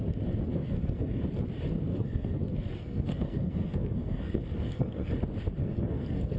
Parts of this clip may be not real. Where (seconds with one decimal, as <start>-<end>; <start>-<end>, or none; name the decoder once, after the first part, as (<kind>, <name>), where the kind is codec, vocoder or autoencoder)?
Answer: 0.5-1.2 (codec, SNAC); 1.9-5.1; 5.6-6.4